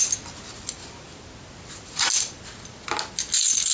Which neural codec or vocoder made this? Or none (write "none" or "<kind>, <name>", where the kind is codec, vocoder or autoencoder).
none